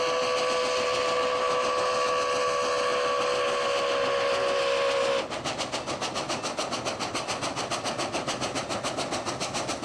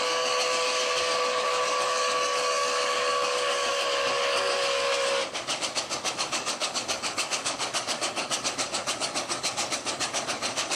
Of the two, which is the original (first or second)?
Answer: first